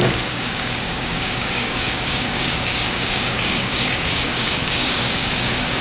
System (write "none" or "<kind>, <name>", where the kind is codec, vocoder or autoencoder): codec, DAC